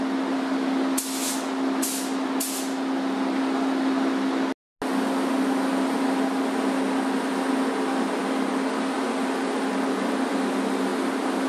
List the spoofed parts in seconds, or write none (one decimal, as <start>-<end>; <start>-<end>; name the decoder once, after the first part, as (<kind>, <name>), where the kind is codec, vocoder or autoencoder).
none